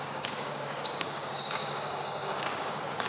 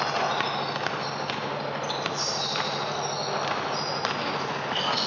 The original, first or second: second